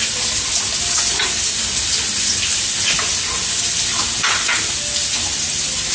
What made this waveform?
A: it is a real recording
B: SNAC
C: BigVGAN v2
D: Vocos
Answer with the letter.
A